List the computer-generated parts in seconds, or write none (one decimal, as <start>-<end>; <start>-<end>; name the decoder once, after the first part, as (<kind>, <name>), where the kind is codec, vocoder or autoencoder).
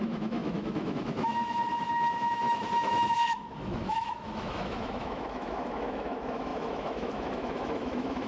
0.0-8.3 (autoencoder, DAC-VAE)